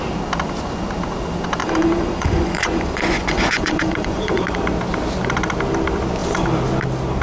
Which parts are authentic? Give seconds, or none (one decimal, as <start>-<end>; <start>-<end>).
0.0-1.6; 4.4-7.2